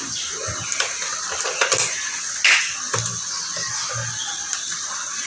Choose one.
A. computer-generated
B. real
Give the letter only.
B